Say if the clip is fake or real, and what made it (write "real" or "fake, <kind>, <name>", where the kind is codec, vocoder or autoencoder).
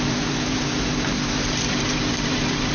fake, vocoder, BigVGAN v2